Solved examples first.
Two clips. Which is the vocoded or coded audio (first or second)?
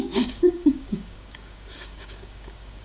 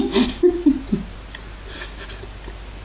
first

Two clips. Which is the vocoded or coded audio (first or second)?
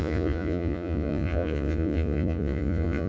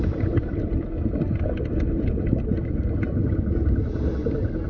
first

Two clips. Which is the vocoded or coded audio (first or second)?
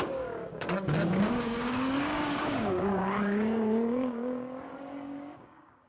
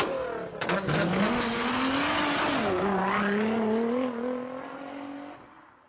first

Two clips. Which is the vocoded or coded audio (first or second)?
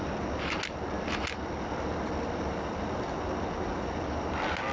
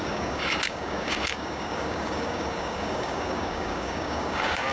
second